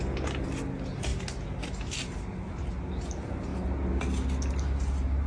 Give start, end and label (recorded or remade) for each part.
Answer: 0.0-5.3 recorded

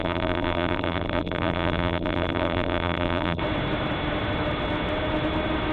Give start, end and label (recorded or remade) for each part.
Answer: 0.0-3.4 remade; 3.4-5.7 recorded

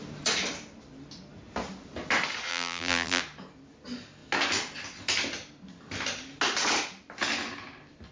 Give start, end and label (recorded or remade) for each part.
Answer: 0.0-2.5 recorded; 2.5-3.2 remade; 3.2-8.1 recorded

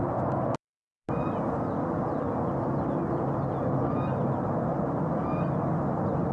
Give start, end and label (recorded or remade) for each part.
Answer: 0.0-6.3 recorded

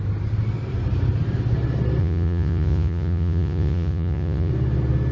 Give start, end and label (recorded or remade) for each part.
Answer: 0.0-2.0 recorded; 2.0-4.5 remade; 4.5-5.1 recorded

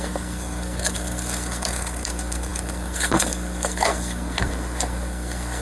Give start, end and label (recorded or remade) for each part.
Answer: 0.0-5.6 remade

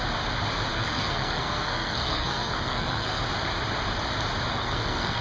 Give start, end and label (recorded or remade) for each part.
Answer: 0.0-0.7 recorded; 0.7-3.2 remade; 3.2-4.5 recorded; 4.5-5.2 remade

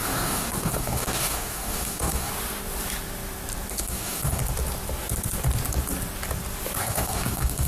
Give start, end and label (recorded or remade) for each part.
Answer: 0.0-2.3 remade; 2.3-3.7 recorded; 3.7-4.4 remade; 4.4-6.8 recorded; 6.8-7.7 remade